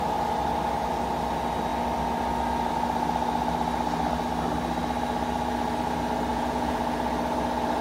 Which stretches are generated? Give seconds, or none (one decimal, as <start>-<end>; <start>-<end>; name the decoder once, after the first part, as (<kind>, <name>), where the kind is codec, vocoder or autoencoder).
6.3-6.8 (vocoder, Vocos)